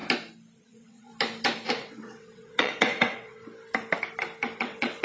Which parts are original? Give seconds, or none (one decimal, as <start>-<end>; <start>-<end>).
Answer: 0.0-0.6; 1.1-1.7; 3.4-4.6